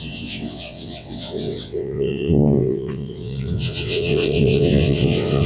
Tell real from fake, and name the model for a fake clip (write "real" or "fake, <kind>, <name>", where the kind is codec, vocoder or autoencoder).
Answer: fake, vocoder, WaveNeXt